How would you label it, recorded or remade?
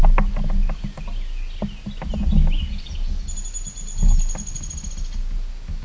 recorded